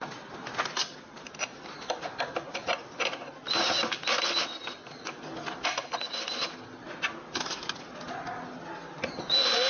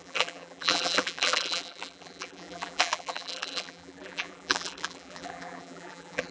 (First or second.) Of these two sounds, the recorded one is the first